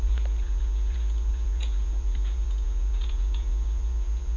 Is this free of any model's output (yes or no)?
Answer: no